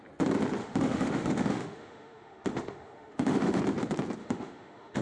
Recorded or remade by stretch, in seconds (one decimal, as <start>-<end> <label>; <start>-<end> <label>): 0.0-0.6 recorded; 0.6-3.6 remade; 3.6-4.2 recorded; 4.2-5.0 remade